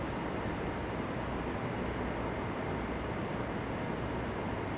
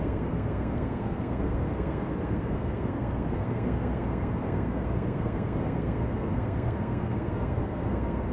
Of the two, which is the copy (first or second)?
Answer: second